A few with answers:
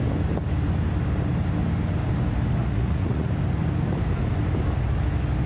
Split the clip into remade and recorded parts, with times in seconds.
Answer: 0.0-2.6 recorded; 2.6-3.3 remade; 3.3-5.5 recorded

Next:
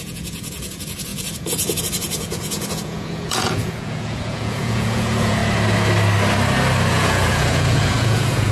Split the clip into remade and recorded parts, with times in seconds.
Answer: 0.0-5.4 remade; 5.4-6.9 recorded; 6.9-8.5 remade

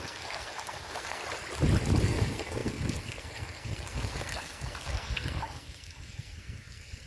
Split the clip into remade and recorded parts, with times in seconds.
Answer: 0.0-1.2 remade; 1.2-2.0 recorded; 2.0-7.1 remade

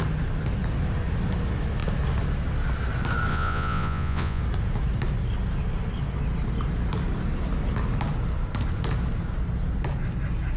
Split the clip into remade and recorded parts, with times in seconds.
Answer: 0.0-3.3 recorded; 3.3-4.4 remade; 4.4-10.6 recorded

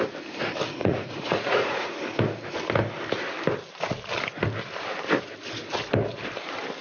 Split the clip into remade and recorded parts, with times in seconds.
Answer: 0.0-0.8 recorded; 0.8-2.0 remade; 2.0-6.8 recorded

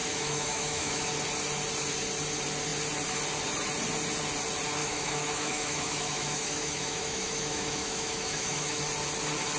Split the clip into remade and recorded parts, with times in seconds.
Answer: 0.0-1.1 remade; 1.1-4.8 recorded; 4.8-8.8 remade; 8.8-9.6 recorded